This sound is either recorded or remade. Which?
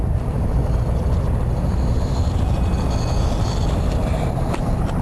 remade